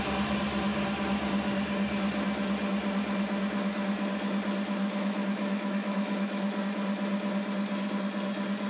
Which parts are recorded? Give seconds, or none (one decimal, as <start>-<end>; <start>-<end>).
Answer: 0.0-4.8; 6.6-8.7